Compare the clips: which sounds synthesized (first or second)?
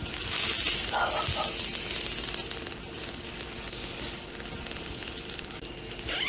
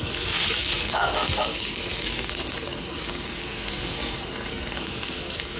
second